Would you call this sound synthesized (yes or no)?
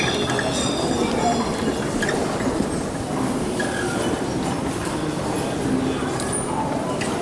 no